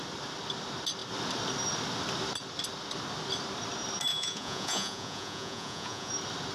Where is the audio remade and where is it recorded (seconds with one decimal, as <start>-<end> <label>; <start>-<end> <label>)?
0.0-4.1 recorded; 4.1-6.1 remade; 6.1-6.5 recorded